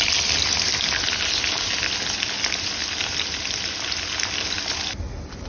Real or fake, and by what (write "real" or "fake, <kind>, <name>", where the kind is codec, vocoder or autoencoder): real